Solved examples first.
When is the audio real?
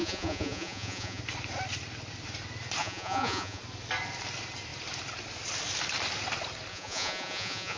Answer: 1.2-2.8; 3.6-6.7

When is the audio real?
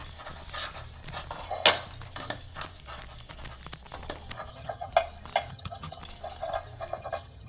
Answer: 0.0-4.5; 4.9-5.5; 6.0-7.0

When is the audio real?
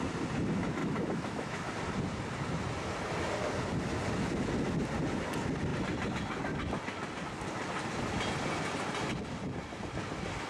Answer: 0.0-0.8; 1.7-10.5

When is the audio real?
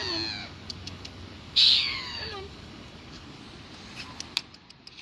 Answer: 0.0-0.4; 3.4-5.0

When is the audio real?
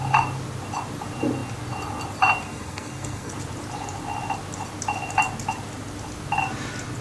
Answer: 0.0-2.4; 3.3-7.0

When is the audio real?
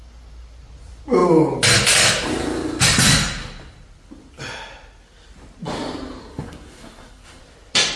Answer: 0.0-6.2; 7.4-8.0